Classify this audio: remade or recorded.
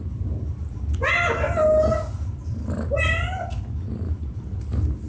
recorded